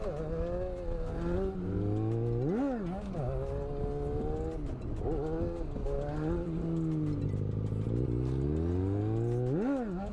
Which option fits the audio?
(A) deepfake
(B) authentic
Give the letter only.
B